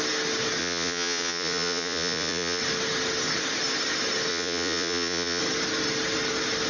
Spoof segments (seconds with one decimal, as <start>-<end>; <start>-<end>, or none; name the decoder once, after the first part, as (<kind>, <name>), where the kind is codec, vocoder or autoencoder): 0.6-2.6 (vocoder, Vocos); 4.3-5.4

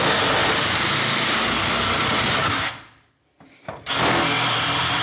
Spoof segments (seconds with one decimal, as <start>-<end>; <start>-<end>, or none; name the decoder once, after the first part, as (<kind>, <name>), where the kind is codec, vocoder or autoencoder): none

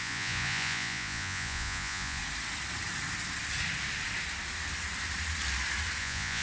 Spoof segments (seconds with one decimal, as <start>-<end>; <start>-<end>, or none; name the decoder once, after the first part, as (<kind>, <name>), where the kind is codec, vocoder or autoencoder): 0.0-2.2 (vocoder, Vocos); 6.0-6.4

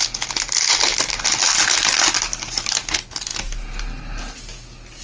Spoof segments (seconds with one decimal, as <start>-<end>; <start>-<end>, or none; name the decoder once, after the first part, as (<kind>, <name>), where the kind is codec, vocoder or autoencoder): none

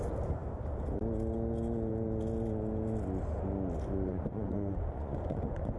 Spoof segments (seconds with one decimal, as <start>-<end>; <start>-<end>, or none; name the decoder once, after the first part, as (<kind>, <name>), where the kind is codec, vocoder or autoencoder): 4.1-5.8 (vocoder, Vocos)

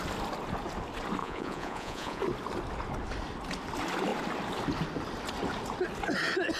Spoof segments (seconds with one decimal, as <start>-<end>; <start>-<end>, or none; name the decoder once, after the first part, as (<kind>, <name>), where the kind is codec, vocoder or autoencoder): 1.2-2.2 (vocoder, Vocos)